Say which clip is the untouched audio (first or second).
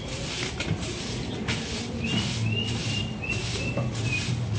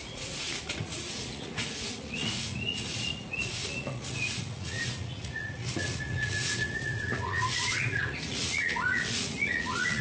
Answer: first